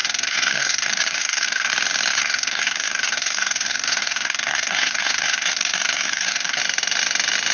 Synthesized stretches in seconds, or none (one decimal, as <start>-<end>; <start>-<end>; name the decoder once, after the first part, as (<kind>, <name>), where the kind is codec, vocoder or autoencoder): 0.0-1.7 (codec, SNAC); 2.1-6.6